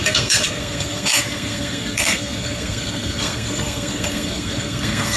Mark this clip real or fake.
fake